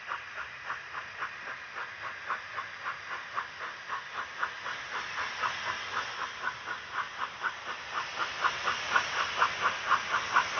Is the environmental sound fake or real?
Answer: real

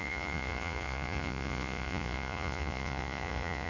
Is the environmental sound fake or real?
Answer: fake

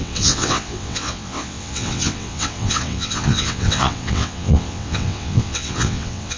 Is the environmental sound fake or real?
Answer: fake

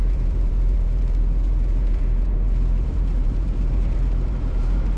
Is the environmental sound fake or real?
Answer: fake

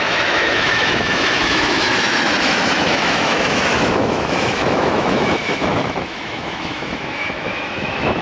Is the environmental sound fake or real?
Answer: fake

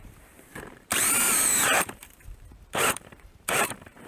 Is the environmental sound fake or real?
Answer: fake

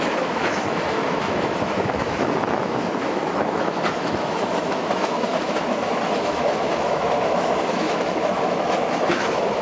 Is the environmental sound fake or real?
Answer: fake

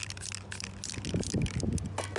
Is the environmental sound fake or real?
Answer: real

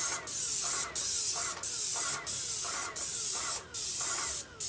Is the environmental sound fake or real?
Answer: real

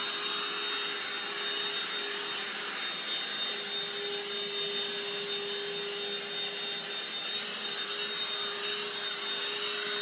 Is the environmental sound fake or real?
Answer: real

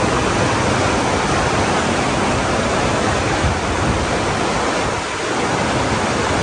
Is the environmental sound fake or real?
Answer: real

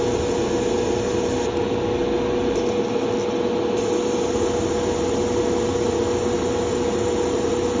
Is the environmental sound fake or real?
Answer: real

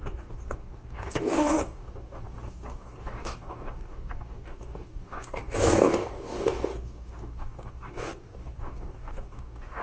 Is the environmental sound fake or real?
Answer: fake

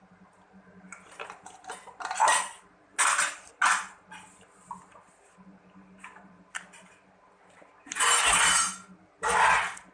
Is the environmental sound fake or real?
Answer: real